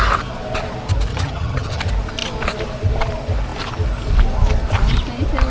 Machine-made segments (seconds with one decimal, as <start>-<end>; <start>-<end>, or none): 1.1-1.8